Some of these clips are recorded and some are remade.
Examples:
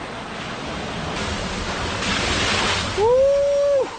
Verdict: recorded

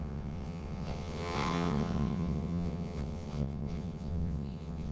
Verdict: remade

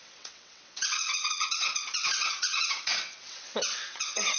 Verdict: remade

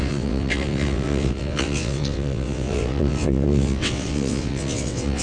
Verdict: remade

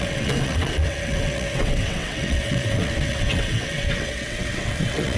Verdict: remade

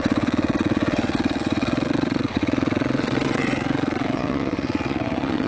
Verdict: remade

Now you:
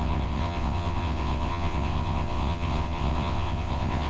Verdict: remade